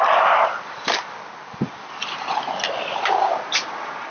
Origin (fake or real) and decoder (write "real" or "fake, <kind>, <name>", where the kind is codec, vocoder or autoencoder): real